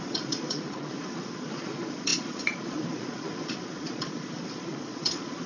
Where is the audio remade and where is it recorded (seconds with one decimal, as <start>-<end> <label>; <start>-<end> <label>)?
0.0-5.5 remade